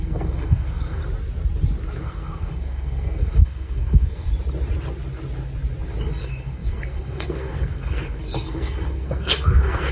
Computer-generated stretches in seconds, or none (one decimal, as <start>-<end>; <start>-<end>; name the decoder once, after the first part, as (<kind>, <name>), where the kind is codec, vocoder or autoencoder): 0.0-1.0 (codec, SNAC); 2.0-4.3; 6.0-9.9